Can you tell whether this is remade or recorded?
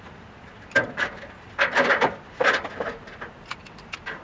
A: recorded